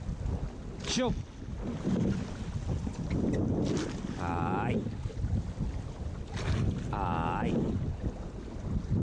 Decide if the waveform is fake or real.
real